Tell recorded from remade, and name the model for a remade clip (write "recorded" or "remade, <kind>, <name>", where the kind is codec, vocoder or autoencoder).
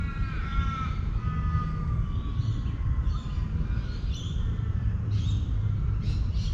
recorded